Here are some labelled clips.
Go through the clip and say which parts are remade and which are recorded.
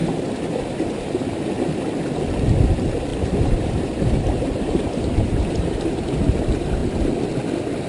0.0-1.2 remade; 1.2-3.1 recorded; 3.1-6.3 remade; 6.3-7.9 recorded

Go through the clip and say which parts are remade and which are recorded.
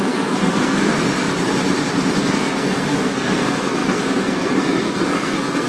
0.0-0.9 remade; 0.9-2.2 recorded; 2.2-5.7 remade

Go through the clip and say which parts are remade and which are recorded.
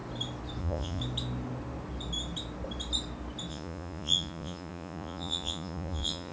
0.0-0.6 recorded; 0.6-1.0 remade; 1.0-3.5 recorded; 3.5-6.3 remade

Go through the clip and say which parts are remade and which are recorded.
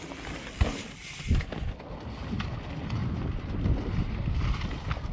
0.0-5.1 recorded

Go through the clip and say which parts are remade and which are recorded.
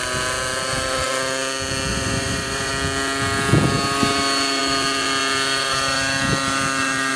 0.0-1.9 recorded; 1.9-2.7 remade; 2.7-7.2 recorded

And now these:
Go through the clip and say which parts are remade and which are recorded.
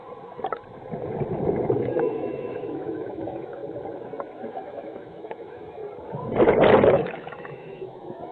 0.0-1.8 recorded; 1.8-3.6 remade; 3.6-4.5 recorded; 4.5-5.8 remade; 5.8-6.9 recorded; 6.9-8.3 remade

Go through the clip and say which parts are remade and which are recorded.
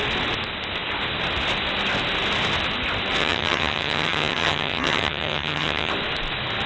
0.0-3.2 recorded; 3.2-5.9 remade; 5.9-6.7 recorded